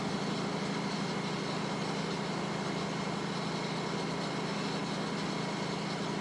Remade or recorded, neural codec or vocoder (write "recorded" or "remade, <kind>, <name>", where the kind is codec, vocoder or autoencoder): recorded